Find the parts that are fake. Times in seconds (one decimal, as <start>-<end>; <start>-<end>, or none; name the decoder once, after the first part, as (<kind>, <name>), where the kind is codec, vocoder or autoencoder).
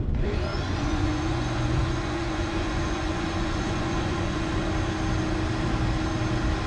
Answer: 0.5-4.5 (vocoder, Vocos)